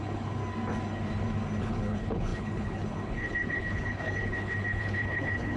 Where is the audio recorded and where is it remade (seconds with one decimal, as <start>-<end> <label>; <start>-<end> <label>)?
0.0-0.4 remade; 0.4-1.6 recorded; 1.6-5.6 remade